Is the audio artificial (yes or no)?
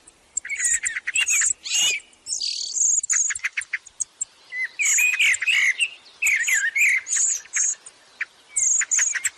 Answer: no